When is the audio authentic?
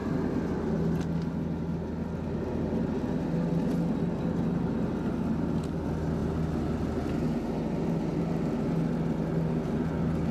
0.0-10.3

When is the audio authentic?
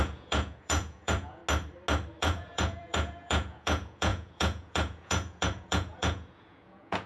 1.4-2.2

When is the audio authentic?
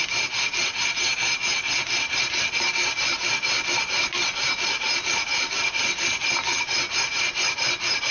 0.0-8.1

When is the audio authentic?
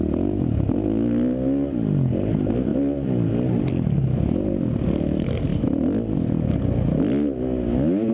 0.0-8.1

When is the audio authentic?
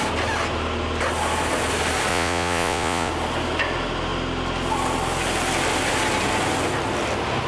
0.0-2.1; 3.1-7.5